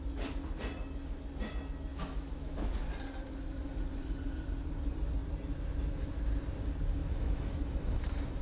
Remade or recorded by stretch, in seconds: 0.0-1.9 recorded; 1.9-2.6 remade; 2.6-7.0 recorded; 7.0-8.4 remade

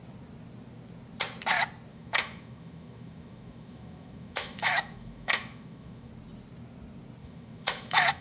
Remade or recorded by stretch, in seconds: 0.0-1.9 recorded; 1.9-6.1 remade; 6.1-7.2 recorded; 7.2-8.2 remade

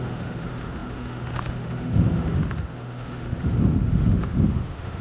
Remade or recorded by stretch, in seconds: 0.0-5.0 remade

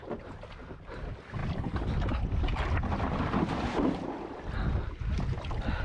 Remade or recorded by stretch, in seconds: 0.0-5.8 recorded

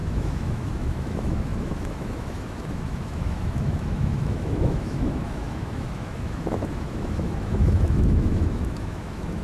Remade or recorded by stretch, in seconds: 0.0-9.4 remade